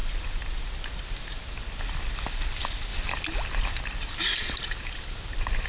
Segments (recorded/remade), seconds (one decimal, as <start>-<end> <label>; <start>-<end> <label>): 0.0-2.9 remade; 2.9-3.6 recorded; 3.6-5.7 remade